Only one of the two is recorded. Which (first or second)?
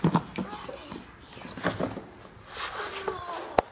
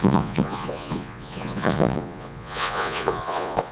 first